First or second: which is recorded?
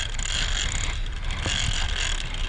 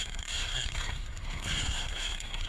first